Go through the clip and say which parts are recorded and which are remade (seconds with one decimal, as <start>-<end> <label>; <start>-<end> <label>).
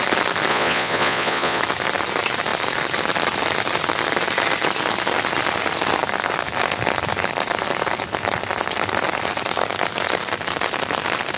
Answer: 0.0-0.5 recorded; 0.5-1.6 remade; 1.6-11.4 recorded